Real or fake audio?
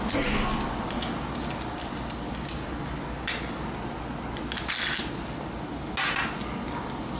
real